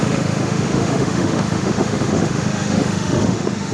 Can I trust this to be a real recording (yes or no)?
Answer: no